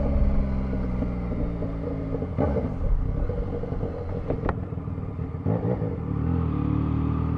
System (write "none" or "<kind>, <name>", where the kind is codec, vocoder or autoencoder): none